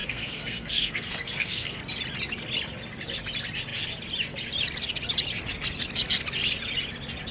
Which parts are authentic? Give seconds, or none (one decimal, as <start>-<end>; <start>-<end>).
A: 1.8-7.3